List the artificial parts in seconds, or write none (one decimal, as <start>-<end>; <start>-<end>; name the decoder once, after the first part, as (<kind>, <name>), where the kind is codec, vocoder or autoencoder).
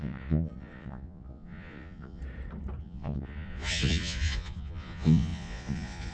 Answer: 0.0-2.2 (vocoder, Vocos); 2.8-6.1